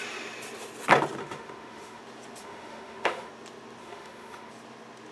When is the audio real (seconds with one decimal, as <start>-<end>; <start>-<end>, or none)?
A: 0.0-1.2; 2.0-2.4; 3.3-3.8; 4.5-5.1